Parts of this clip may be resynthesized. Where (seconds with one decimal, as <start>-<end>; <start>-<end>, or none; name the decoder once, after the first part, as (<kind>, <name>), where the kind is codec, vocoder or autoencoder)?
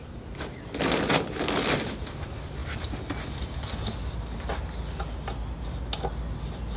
none